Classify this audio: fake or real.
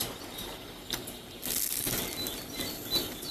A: real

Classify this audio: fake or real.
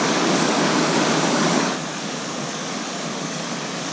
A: fake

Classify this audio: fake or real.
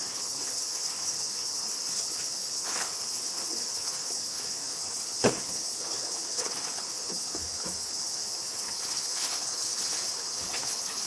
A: fake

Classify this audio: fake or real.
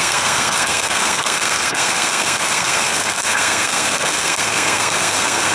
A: fake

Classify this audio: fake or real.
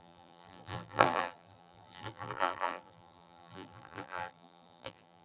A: fake